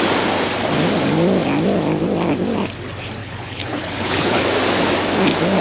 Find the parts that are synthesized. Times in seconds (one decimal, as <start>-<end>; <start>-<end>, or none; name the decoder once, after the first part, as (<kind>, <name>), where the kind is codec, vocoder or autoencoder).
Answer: 3.2-4.4 (codec, HILCodec)